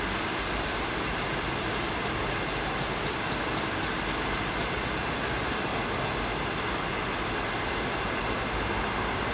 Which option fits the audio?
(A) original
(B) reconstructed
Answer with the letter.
A